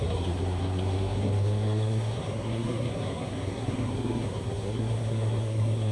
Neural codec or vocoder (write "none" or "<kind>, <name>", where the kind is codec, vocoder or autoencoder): codec, SNAC